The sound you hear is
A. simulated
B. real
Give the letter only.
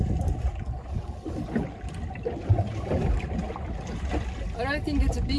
B